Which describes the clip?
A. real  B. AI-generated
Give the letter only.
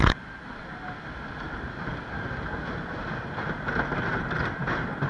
A